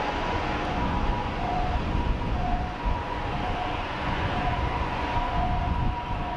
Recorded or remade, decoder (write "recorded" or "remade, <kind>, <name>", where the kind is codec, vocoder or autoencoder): remade, vocoder, Vocos